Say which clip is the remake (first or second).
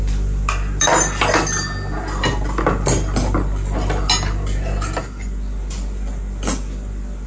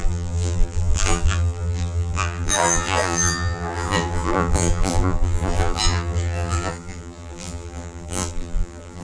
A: second